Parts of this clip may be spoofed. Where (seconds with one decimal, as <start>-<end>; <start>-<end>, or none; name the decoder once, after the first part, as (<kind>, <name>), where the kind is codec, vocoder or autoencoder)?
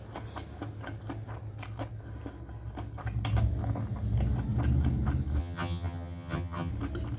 5.4-6.7 (vocoder, HiFi-GAN)